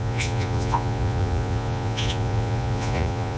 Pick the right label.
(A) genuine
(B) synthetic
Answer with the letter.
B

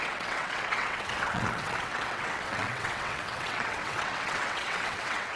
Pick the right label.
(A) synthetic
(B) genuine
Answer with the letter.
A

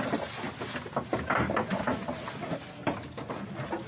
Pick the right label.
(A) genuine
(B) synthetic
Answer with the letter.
A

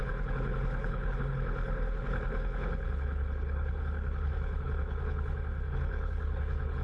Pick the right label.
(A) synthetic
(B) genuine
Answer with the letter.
A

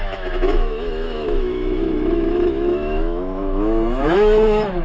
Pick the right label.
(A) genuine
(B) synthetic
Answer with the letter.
B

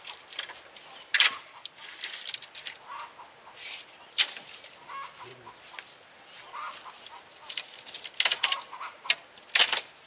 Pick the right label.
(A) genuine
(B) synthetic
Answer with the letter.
A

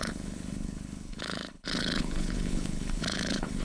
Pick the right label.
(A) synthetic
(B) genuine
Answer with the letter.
A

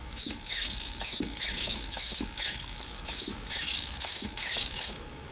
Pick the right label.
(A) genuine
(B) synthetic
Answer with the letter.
B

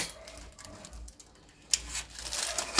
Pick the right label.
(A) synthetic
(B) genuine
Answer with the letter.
B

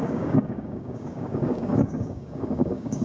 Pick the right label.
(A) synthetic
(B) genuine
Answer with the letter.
A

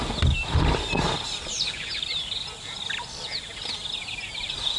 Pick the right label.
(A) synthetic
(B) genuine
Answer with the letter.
B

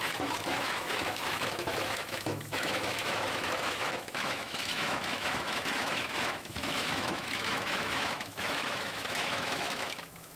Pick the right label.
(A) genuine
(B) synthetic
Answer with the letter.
B